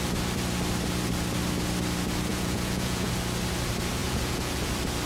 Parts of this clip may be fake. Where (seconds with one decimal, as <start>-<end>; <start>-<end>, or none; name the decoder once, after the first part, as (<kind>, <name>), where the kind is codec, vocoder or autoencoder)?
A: 2.3-3.1 (vocoder, Vocos); 4.0-4.6